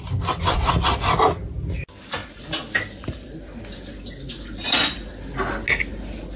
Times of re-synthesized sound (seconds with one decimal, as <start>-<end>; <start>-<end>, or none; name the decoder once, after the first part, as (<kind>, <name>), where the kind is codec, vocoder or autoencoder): none